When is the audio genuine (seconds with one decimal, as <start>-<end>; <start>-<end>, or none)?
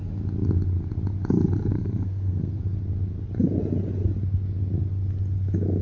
0.0-1.7; 2.6-5.8